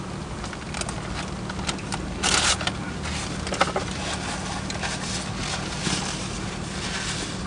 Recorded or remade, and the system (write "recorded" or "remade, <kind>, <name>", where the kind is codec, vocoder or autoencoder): recorded